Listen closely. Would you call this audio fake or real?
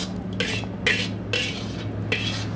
real